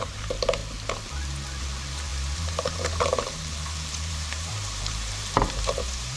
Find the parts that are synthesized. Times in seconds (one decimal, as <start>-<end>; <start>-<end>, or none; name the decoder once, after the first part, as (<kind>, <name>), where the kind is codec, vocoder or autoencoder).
0.0-0.6 (vocoder, BigVGAN v2); 1.6-6.2